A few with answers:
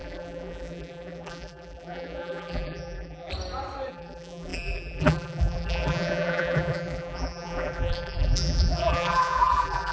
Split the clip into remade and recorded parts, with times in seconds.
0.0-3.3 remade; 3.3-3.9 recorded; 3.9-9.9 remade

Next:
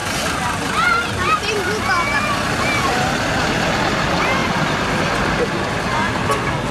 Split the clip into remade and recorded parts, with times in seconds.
0.0-4.4 recorded; 4.4-6.1 remade; 6.1-6.7 recorded

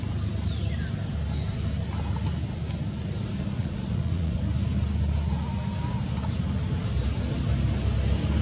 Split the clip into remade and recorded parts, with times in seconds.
0.0-3.6 recorded; 3.6-4.4 remade; 4.4-8.4 recorded

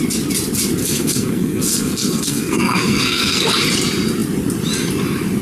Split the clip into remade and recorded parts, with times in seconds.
0.0-0.8 recorded; 0.8-3.5 remade; 3.5-5.4 recorded

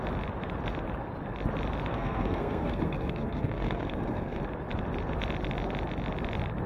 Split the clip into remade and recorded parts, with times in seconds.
0.0-1.9 recorded; 1.9-4.4 remade; 4.4-6.7 recorded

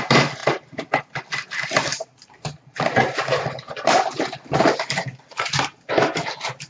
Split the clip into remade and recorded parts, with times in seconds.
0.0-0.4 recorded; 0.4-1.0 remade; 1.0-1.9 recorded; 1.9-5.9 remade; 5.9-6.7 recorded

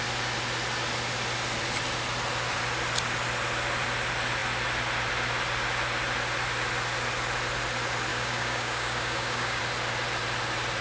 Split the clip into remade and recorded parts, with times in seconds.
0.0-8.1 recorded; 8.1-9.6 remade; 9.6-10.8 recorded

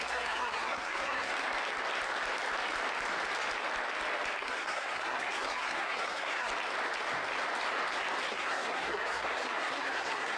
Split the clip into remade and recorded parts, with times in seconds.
0.0-1.3 remade; 1.3-4.4 recorded; 4.4-6.5 remade; 6.5-8.3 recorded; 8.3-10.4 remade